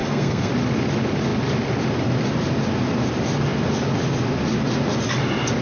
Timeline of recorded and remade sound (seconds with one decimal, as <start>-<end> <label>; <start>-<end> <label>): 0.0-0.5 remade; 0.5-5.6 recorded